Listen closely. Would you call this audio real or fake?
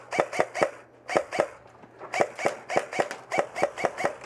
real